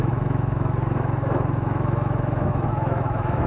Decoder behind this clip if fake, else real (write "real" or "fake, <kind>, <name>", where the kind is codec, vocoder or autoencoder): fake, autoencoder, DAC-VAE